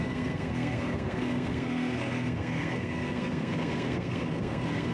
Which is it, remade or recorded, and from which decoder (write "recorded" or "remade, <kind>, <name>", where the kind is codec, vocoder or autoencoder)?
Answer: remade, codec, SNAC